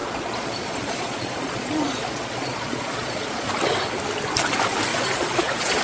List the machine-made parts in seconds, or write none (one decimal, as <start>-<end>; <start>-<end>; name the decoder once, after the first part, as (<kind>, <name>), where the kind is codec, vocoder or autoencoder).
0.0-3.5 (vocoder, Vocos); 4.9-5.8